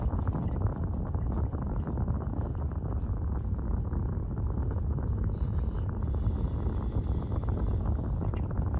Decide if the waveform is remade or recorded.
recorded